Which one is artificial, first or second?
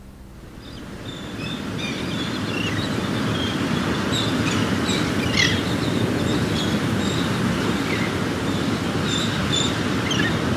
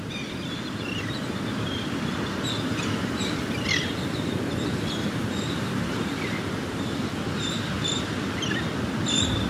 second